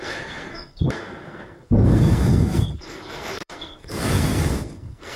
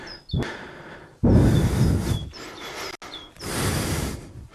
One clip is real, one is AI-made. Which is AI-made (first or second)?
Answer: first